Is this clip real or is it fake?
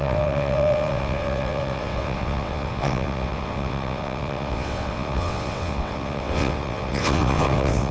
fake